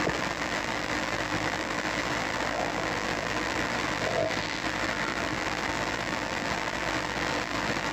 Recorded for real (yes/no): no